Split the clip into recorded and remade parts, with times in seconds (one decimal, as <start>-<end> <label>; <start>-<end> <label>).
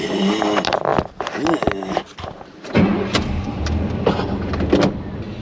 0.0-5.4 recorded